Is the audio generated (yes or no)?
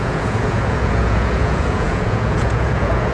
yes